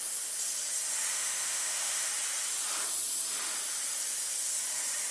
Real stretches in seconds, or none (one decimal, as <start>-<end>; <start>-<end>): 0.0-1.1; 2.1-5.1